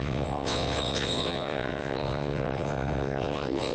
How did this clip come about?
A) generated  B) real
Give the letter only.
A